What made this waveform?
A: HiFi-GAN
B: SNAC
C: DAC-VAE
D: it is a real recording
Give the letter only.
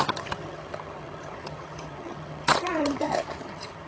A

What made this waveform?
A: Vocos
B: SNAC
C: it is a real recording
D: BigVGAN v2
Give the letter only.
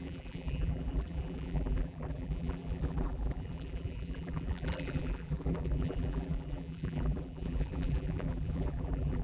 D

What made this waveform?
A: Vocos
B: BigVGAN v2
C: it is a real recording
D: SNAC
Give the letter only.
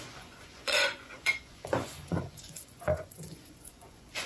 A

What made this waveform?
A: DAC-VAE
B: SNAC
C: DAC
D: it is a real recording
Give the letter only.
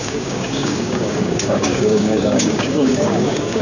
C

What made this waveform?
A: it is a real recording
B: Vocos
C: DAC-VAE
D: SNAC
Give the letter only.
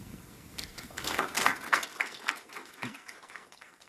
D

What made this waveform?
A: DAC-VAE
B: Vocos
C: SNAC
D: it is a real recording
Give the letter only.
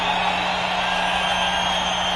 D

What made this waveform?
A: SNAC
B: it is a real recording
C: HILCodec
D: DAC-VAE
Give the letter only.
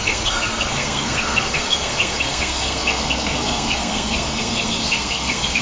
A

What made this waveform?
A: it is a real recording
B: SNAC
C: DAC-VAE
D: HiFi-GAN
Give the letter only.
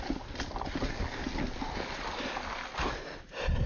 A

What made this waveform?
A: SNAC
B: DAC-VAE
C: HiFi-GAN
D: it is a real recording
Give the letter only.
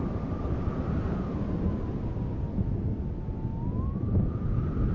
D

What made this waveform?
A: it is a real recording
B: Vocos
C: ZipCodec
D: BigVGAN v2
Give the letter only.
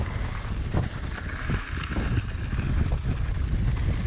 A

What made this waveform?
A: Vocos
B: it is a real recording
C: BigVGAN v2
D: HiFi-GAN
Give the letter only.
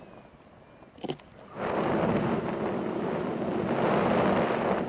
B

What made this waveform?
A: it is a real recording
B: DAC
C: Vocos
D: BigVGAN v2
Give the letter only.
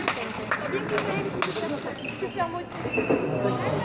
A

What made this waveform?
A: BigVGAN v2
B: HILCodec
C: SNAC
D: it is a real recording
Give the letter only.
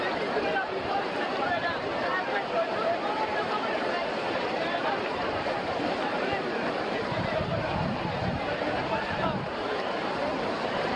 A